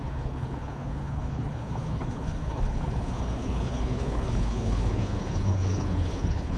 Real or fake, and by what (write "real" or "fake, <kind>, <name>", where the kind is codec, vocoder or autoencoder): fake, codec, HILCodec